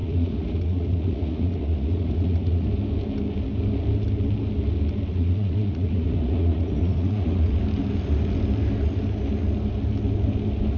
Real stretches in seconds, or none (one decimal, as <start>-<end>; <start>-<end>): 2.7-5.1; 7.5-10.8